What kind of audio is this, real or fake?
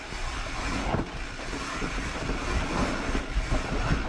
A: real